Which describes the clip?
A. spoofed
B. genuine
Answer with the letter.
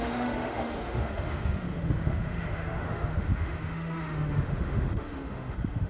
A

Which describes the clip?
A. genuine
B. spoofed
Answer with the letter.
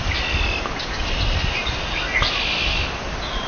A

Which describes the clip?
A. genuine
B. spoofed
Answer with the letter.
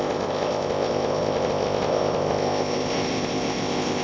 B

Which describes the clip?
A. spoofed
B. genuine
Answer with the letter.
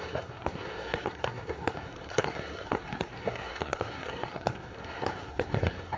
A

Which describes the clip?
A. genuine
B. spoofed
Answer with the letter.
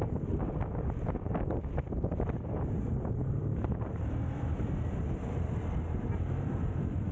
B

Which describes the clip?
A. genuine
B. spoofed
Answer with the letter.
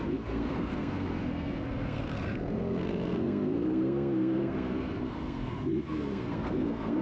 B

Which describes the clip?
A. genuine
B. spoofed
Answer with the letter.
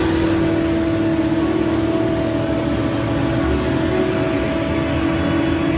A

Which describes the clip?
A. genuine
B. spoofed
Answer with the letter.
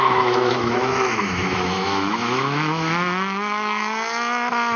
B